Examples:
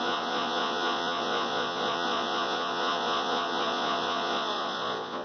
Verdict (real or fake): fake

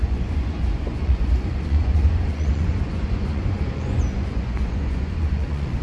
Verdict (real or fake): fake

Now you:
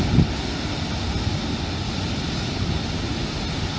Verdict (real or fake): real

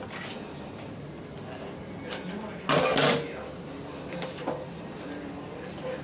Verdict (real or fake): real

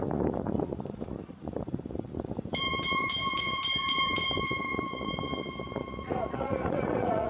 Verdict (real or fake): fake